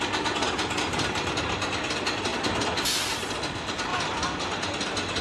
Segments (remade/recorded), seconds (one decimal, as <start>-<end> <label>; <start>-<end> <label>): 0.0-5.2 recorded